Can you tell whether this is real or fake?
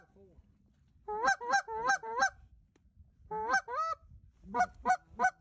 real